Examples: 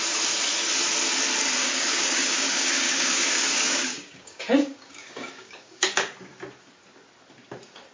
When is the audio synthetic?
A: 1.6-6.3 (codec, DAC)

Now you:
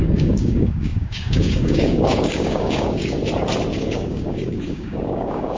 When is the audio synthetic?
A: 0.0-3.2 (codec, DAC); 3.8-5.6

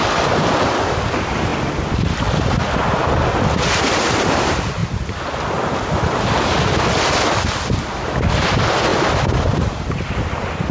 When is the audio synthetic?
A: none

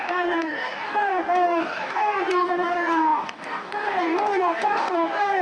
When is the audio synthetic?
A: 0.0-5.4 (codec, DAC)

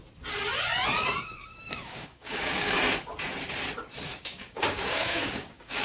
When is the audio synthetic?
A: 1.0-2.8 (codec, DAC); 4.1-5.8

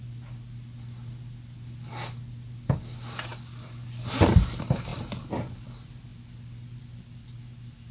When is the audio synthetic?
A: none

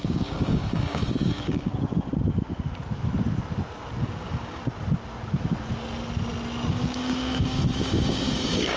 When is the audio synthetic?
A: 0.0-1.7 (codec, DAC); 4.0-4.6; 6.7-8.8

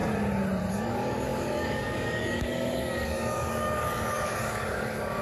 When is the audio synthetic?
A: 0.7-5.2 (codec, DAC)